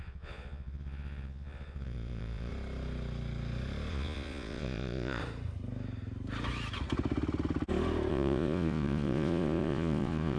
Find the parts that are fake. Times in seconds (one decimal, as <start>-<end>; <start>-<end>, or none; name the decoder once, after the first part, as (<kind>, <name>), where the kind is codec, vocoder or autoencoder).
0.0-2.5 (vocoder, Vocos); 3.9-5.2; 8.1-10.4